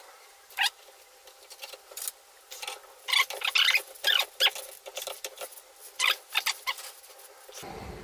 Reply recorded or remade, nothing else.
recorded